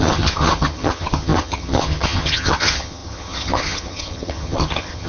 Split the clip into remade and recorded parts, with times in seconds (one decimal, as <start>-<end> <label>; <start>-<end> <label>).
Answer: 0.0-5.1 remade